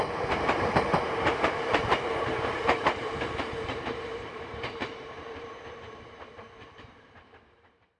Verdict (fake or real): fake